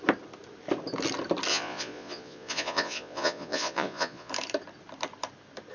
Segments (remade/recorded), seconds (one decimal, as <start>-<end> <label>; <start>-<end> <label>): 0.0-1.5 recorded; 1.5-4.3 remade; 4.3-5.7 recorded